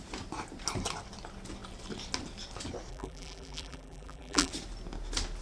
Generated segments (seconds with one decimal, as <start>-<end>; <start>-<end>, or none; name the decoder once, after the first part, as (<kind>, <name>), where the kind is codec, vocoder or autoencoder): 2.9-4.5 (vocoder, BigVGAN v2)